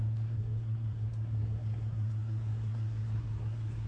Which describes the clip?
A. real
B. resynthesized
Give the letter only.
B